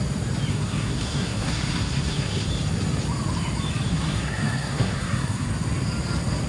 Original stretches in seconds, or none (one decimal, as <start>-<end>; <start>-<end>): 0.0-0.5; 2.5-3.9; 5.5-6.5